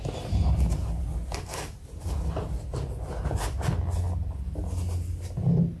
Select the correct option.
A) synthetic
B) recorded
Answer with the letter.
B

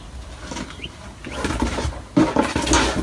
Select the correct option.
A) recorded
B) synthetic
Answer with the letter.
A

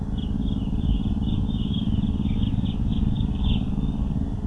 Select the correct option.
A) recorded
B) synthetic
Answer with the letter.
A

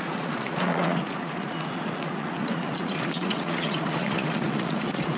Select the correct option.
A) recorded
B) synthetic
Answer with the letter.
B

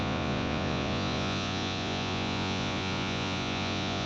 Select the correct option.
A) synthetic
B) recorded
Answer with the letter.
A